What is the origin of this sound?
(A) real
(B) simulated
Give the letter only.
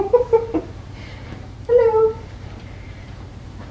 B